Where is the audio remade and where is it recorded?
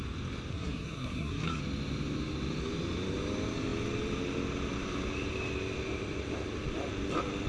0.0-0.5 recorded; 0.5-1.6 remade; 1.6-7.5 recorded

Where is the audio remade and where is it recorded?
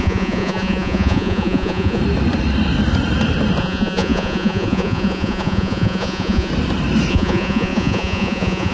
0.0-2.0 remade; 2.0-3.6 recorded; 3.6-6.5 remade; 6.5-7.1 recorded; 7.1-8.7 remade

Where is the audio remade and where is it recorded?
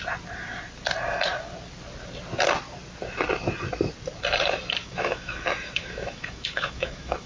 0.0-4.8 recorded; 4.8-7.3 remade